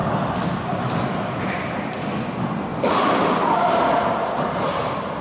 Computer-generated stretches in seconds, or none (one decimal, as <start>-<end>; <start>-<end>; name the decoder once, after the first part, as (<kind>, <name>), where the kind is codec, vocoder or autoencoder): none